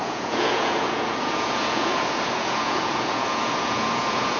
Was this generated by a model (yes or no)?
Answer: yes